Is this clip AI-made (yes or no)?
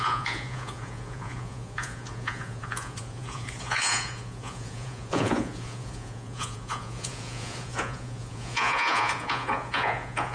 yes